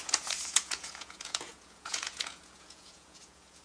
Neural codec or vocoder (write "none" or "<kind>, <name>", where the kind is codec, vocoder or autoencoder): vocoder, Vocos